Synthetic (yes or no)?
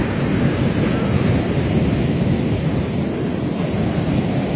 no